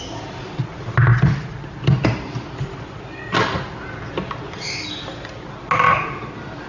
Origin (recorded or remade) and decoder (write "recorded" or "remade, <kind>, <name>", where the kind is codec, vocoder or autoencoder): recorded